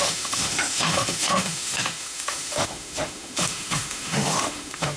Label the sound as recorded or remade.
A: remade